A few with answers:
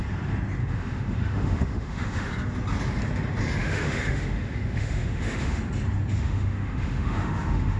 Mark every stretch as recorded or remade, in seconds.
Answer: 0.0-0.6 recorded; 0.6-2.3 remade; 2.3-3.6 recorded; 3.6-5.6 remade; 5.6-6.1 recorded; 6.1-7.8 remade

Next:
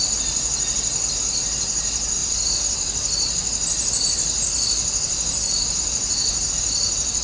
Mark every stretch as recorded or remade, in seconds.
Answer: 0.0-7.2 recorded

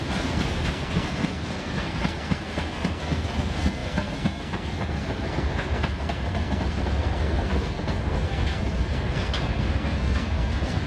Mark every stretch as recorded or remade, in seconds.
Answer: 0.0-10.9 remade

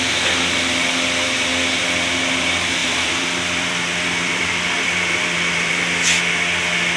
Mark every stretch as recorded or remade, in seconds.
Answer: 0.0-2.8 recorded; 2.8-5.7 remade; 5.7-7.0 recorded

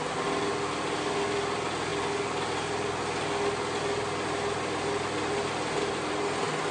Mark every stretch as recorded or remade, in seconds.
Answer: 0.0-6.7 recorded

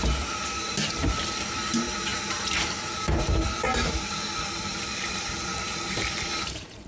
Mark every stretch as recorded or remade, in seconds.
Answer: 0.0-6.9 remade

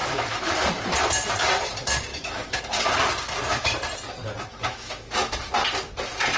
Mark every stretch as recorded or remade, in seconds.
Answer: 0.0-0.5 remade; 0.5-2.1 recorded; 2.1-2.6 remade; 2.6-4.5 recorded; 4.5-5.5 remade; 5.5-6.4 recorded